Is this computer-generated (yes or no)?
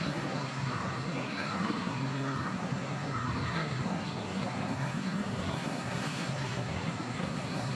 yes